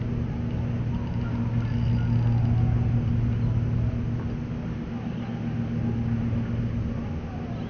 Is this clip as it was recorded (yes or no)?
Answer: yes